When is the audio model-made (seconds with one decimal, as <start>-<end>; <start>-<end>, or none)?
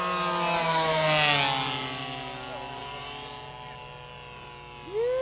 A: none